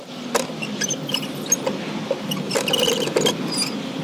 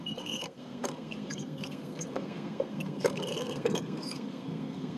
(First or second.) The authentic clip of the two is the first